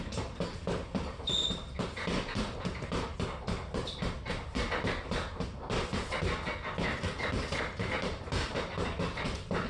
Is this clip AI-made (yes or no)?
no